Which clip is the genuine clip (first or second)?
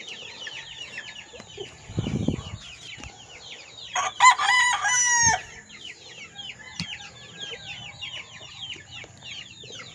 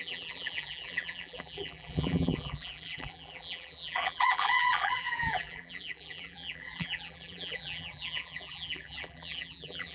first